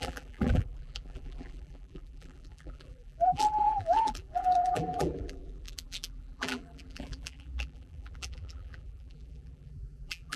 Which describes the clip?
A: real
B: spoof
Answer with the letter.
B